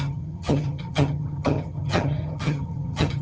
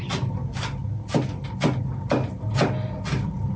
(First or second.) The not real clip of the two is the first